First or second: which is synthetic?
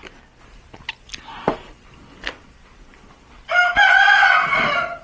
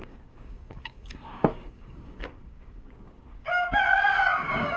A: second